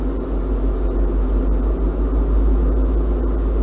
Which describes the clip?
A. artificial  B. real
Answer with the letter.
B